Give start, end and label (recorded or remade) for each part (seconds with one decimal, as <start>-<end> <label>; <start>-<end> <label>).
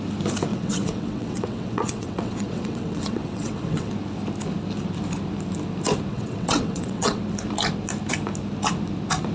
0.0-0.5 recorded; 0.5-3.9 remade; 3.9-6.1 recorded; 6.1-7.2 remade; 7.2-9.3 recorded